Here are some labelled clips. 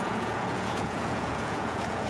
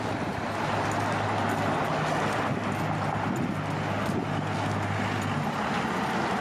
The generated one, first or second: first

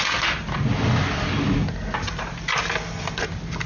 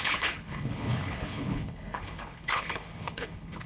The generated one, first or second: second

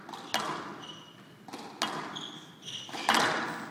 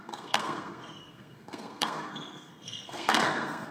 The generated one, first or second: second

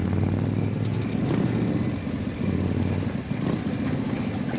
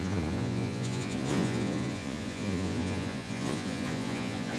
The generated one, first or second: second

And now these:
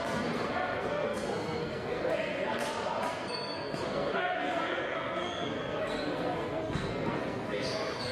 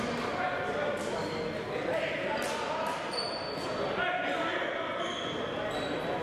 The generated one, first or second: first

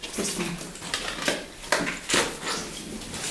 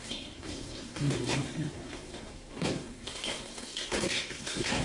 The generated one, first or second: second